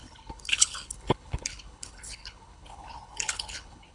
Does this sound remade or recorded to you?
remade